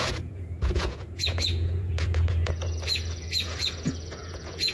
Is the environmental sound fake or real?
fake